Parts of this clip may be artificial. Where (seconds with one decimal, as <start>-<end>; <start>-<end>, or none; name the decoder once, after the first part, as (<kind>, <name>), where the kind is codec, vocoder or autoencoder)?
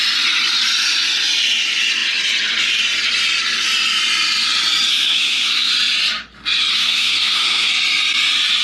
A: 4.9-5.7 (codec, SNAC); 6.7-7.7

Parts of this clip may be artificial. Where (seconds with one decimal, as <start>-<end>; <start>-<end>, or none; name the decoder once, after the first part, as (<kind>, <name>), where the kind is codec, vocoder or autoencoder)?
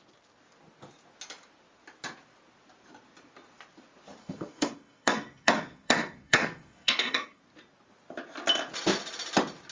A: 4.2-7.4 (codec, SNAC)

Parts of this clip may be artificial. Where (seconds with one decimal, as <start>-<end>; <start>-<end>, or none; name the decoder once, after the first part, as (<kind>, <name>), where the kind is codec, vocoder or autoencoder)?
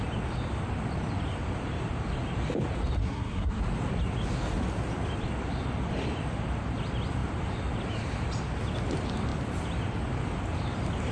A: 3.0-3.6 (codec, SNAC)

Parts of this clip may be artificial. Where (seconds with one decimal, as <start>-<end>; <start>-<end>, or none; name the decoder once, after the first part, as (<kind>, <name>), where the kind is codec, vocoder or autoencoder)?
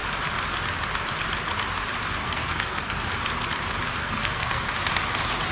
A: 2.2-3.0 (codec, SNAC); 4.0-4.7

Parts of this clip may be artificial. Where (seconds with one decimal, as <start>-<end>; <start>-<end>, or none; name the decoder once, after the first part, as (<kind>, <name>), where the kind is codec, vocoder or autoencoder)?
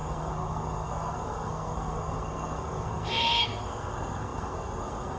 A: 0.0-5.2 (codec, SNAC)